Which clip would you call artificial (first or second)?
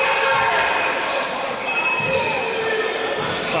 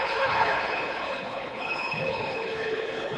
second